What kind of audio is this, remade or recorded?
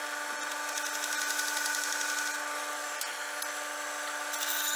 recorded